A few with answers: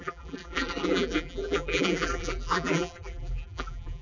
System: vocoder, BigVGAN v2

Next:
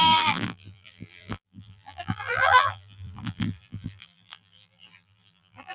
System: vocoder, BigVGAN v2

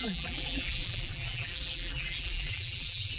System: vocoder, BigVGAN v2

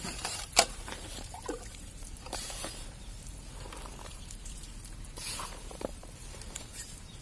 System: vocoder, BigVGAN v2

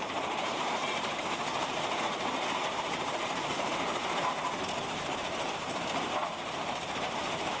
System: vocoder, BigVGAN v2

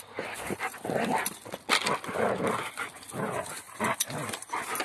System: vocoder, BigVGAN v2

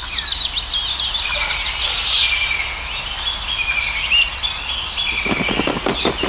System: none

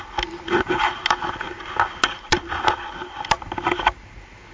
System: none